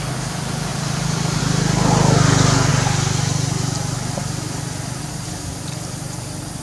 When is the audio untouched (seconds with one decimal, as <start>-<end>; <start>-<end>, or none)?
0.0-0.7; 1.4-6.6